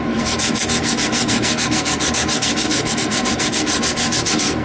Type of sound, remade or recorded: remade